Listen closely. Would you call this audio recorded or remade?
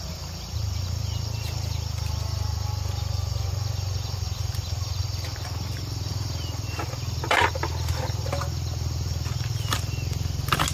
recorded